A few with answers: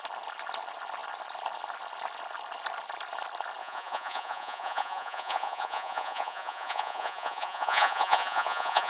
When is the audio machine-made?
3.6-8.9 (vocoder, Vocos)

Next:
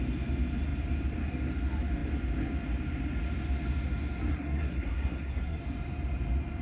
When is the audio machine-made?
4.3-5.6 (codec, SNAC)

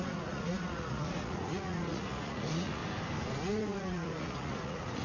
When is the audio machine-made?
0.0-2.8 (vocoder, Vocos); 3.5-5.0